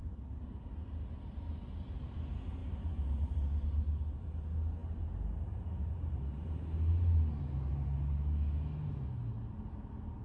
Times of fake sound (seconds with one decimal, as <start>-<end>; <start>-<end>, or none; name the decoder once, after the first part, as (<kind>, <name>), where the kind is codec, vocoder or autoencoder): none